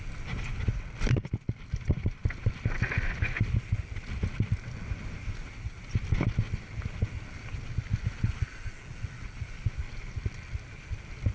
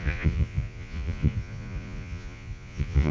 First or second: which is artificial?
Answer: second